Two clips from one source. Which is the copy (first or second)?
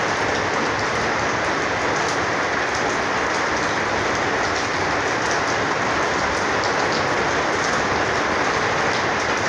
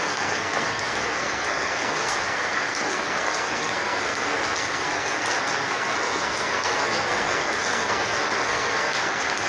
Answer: second